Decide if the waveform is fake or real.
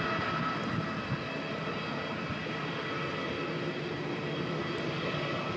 real